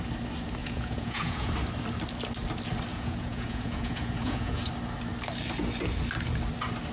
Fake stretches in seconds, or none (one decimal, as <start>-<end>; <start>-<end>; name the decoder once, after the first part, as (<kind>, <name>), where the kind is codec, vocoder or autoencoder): 0.6-1.5 (vocoder, Vocos); 2.9-4.7